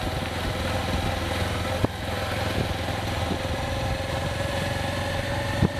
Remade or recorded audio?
recorded